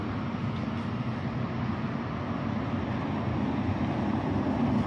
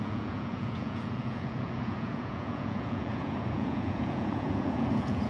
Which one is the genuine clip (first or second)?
first